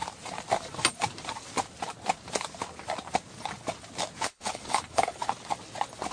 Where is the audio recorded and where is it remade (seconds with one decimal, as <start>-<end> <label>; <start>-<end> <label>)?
0.0-4.3 recorded; 4.3-5.2 remade; 5.2-6.1 recorded